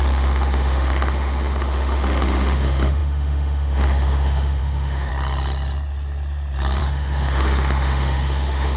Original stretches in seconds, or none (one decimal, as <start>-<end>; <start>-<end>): 5.1-6.8